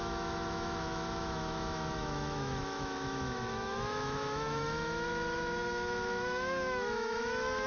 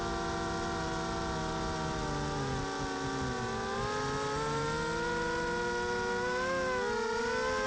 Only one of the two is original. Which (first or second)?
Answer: second